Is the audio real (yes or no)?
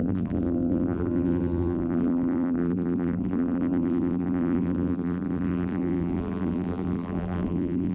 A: no